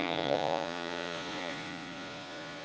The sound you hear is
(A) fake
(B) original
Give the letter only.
A